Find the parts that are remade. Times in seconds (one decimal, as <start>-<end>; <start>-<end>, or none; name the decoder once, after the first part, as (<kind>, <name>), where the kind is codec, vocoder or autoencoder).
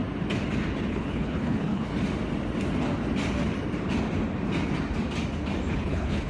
0.9-1.9 (codec, HILCodec); 5.7-6.3